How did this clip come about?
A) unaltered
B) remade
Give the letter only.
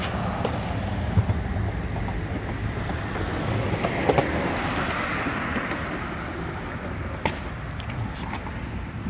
A